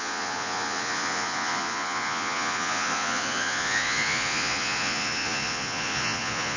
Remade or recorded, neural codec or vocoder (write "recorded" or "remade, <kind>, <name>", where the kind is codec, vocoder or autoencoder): remade, vocoder, Vocos